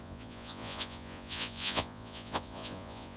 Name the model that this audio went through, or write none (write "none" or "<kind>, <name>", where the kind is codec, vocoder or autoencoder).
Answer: vocoder, Vocos